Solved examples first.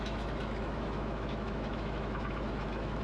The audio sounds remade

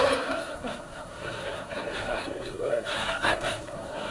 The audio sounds remade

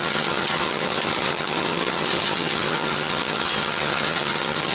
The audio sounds remade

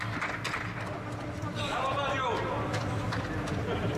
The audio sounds recorded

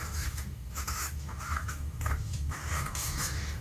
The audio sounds remade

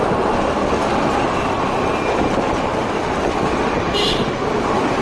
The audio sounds recorded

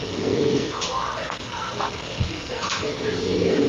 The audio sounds remade